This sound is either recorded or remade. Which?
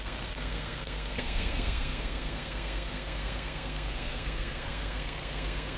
remade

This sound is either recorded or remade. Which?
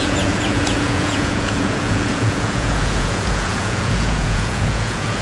remade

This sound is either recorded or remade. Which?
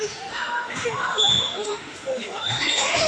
remade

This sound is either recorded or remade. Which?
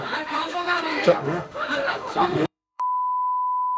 remade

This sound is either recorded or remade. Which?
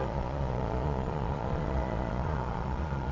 remade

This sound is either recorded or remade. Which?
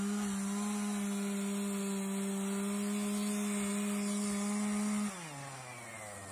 recorded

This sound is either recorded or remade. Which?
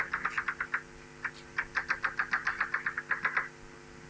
recorded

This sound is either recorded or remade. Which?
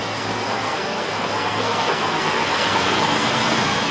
remade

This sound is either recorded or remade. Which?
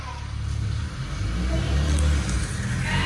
recorded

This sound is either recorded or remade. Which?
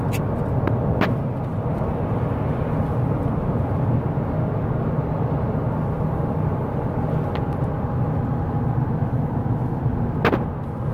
recorded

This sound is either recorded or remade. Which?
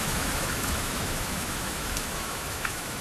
remade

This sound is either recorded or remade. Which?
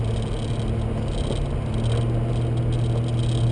recorded